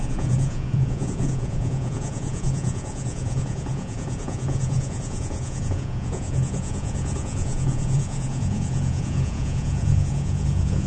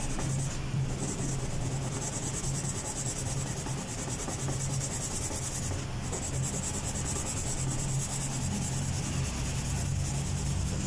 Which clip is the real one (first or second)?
second